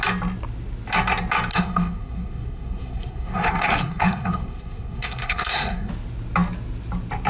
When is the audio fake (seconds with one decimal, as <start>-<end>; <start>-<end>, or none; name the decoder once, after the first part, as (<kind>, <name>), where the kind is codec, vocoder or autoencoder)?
1.5-5.9 (codec, SNAC)